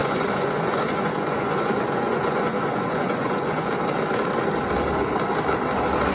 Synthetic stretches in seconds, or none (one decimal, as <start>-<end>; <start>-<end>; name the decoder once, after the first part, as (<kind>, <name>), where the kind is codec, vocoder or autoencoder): 0.0-3.7 (vocoder, Vocos)